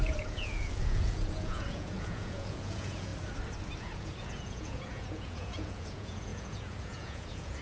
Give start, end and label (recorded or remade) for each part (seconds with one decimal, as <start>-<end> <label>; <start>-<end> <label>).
0.0-3.1 remade; 3.1-3.8 recorded; 3.8-7.6 remade